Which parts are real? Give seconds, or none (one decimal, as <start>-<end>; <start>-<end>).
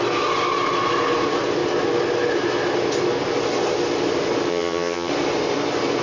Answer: 0.0-4.5; 5.1-6.0